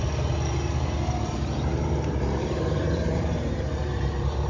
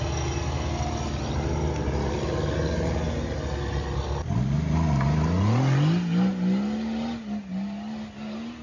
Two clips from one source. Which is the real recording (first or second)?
second